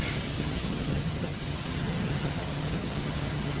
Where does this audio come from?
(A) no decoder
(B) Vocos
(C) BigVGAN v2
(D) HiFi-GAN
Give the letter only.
D